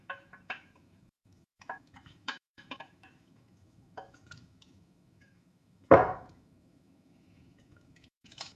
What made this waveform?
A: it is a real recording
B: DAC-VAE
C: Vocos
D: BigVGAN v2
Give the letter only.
B